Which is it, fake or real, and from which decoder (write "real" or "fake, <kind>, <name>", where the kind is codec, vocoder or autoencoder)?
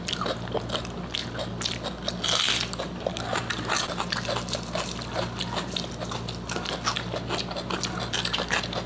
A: real